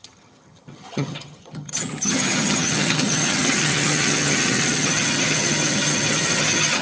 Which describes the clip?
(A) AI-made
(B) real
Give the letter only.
A